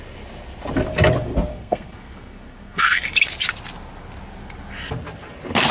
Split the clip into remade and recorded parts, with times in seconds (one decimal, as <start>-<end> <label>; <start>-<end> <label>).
0.0-1.5 recorded; 1.5-3.0 remade; 3.0-5.7 recorded